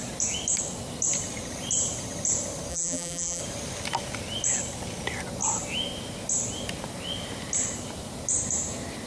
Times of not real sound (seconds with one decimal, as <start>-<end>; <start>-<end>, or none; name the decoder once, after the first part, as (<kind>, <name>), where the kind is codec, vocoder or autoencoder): 2.7-3.4 (vocoder, BigVGAN v2)